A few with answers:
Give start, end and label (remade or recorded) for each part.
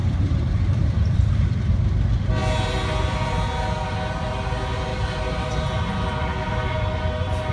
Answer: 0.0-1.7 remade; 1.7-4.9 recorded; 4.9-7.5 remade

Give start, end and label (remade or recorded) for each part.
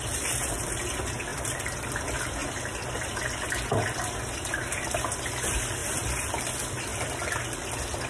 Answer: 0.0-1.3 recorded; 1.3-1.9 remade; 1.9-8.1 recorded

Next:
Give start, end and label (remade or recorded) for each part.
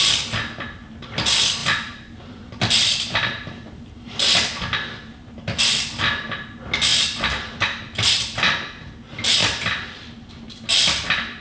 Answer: 0.0-1.6 recorded; 1.6-4.1 remade; 4.1-6.9 recorded; 6.9-8.1 remade; 8.1-9.4 recorded; 9.4-10.3 remade; 10.3-11.4 recorded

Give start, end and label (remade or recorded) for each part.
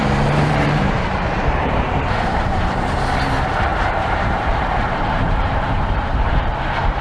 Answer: 0.0-3.2 remade; 3.2-3.7 recorded; 3.7-6.5 remade; 6.5-7.0 recorded